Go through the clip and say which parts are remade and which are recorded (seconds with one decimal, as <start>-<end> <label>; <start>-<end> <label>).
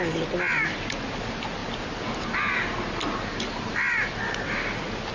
0.0-5.1 recorded